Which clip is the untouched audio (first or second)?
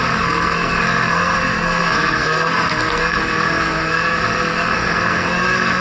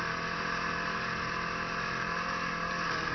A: second